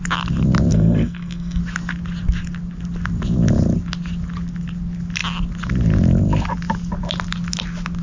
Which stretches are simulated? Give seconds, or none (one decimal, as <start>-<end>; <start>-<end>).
0.7-1.6